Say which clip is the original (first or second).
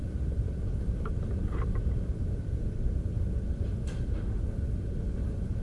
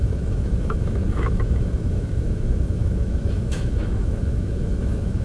first